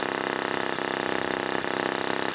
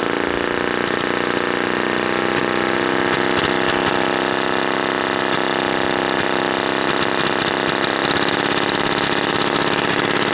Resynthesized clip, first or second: first